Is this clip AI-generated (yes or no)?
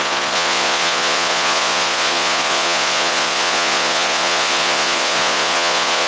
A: yes